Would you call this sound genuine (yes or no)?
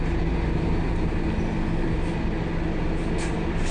yes